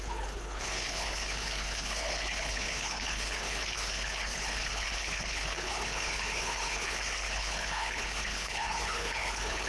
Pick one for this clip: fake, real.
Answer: fake